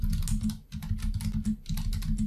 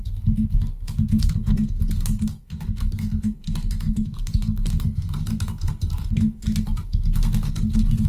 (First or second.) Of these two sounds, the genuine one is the first